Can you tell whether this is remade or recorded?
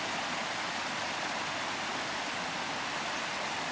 recorded